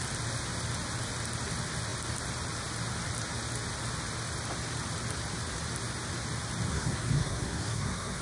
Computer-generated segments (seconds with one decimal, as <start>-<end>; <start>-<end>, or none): 6.7-8.2